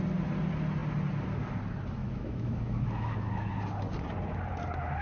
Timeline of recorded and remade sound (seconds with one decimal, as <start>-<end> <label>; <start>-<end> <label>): 0.0-2.0 recorded; 2.0-3.5 remade; 3.5-5.0 recorded